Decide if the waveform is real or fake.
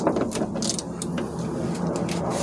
real